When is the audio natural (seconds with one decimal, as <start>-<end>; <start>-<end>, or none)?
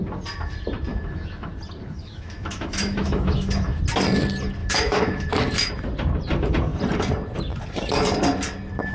0.0-0.9; 1.5-2.0; 3.8-4.6; 5.7-8.9